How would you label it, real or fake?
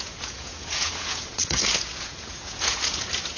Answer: fake